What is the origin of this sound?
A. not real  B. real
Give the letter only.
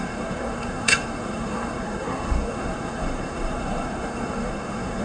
A